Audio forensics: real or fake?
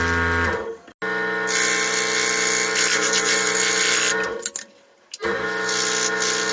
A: real